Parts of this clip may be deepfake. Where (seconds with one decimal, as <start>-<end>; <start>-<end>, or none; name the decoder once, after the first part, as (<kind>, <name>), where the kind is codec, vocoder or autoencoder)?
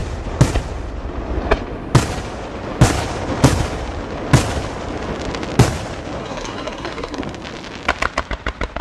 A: 6.2-7.2 (codec, SNAC)